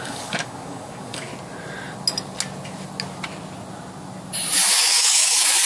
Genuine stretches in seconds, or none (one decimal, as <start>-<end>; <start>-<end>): 1.3-4.5